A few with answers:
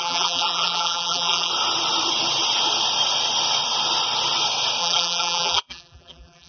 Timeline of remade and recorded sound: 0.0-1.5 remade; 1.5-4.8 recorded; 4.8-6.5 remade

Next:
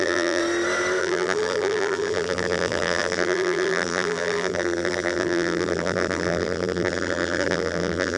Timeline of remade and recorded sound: 0.0-0.4 remade; 0.4-1.0 recorded; 1.0-8.2 remade